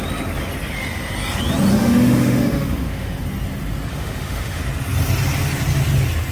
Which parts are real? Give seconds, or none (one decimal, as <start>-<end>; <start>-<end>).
0.0-1.7; 3.2-3.9; 4.6-6.3